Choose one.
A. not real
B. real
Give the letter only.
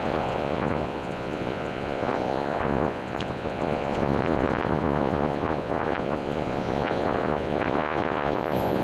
A